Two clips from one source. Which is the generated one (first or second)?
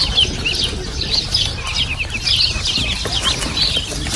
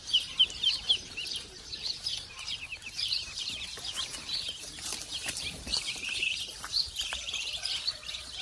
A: second